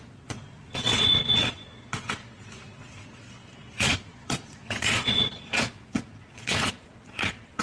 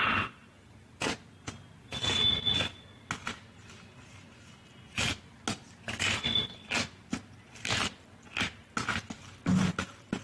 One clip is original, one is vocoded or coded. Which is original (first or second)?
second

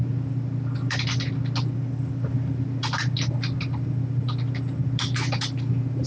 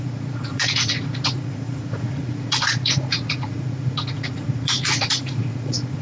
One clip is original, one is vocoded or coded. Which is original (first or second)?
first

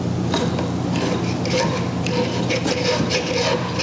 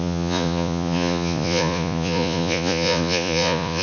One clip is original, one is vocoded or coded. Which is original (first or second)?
first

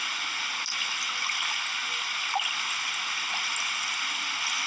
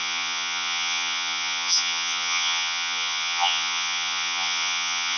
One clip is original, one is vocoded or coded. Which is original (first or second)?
first